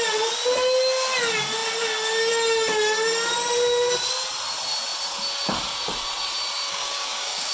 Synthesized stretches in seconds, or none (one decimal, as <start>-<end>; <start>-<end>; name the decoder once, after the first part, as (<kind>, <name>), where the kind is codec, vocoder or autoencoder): 6.7-7.5 (codec, DAC)